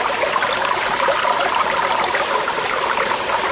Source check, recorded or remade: recorded